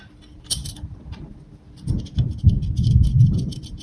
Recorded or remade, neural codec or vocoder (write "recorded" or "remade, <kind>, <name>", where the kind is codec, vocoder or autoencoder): remade, vocoder, BigVGAN v2